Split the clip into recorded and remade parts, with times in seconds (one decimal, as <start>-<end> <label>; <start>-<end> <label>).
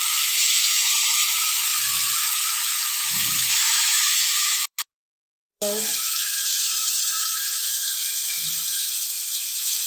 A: 0.0-9.9 remade